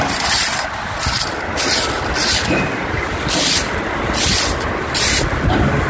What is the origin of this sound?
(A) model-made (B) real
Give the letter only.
B